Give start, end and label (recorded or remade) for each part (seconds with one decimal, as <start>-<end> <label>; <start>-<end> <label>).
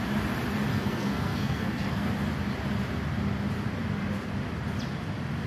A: 0.0-0.7 recorded; 0.7-2.1 remade; 2.1-5.5 recorded